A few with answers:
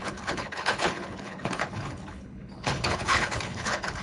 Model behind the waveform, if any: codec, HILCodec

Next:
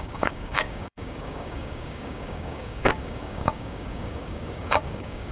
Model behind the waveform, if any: codec, DAC